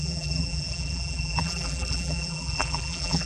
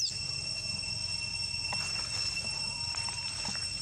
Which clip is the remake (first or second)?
first